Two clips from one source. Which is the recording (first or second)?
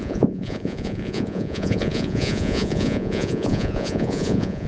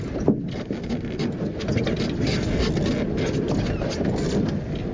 second